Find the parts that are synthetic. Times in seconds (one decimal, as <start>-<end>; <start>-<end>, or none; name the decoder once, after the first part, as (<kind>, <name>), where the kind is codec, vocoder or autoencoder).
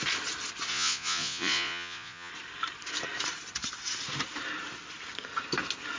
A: 0.7-2.3 (vocoder, Vocos)